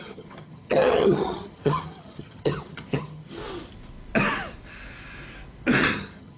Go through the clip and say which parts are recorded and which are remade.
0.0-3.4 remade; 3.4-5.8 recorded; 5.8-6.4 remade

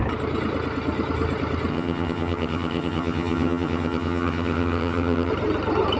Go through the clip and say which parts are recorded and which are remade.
0.0-1.7 recorded; 1.7-5.3 remade; 5.3-6.0 recorded

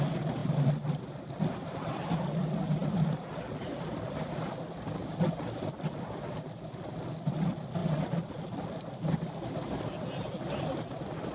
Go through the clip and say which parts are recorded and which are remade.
0.0-11.3 recorded

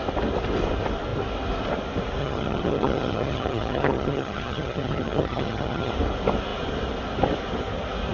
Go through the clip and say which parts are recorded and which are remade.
0.0-2.2 recorded; 2.2-5.9 remade; 5.9-8.1 recorded

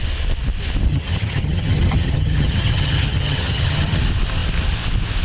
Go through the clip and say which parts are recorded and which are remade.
0.0-0.9 recorded; 0.9-4.0 remade; 4.0-5.2 recorded

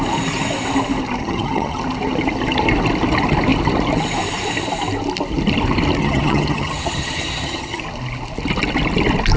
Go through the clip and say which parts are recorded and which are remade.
0.0-1.2 recorded; 1.2-1.8 remade; 1.8-6.0 recorded; 6.0-7.8 remade; 7.8-9.4 recorded